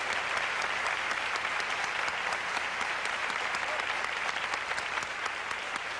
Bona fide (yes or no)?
yes